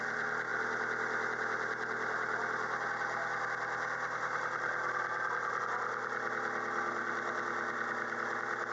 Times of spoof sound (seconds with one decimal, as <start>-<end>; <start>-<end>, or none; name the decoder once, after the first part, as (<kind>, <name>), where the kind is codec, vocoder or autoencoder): none